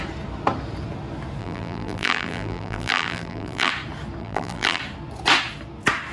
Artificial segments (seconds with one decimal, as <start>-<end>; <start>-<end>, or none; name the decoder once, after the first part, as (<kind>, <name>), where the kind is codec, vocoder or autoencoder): 1.4-3.7 (vocoder, BigVGAN v2); 4.2-4.8